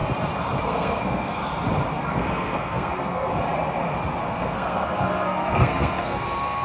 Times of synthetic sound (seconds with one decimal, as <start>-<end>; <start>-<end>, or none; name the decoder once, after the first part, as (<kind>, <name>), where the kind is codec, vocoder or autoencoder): 0.6-1.5 (codec, SNAC); 2.1-3.3; 4.2-6.6